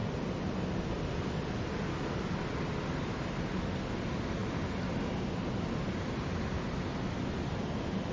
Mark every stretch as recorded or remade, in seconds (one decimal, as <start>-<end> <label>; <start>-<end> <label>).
0.0-8.1 recorded